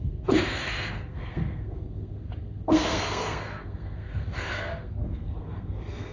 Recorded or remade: remade